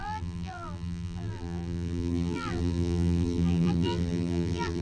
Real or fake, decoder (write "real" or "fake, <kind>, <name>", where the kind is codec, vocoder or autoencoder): fake, vocoder, BigVGAN v2